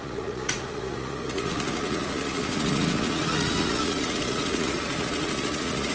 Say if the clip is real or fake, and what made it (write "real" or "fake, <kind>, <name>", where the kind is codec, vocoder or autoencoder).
fake, vocoder, Vocos